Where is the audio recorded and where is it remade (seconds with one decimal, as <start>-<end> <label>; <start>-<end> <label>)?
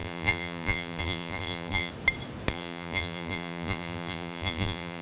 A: 0.0-1.9 remade; 1.9-2.5 recorded; 2.5-5.0 remade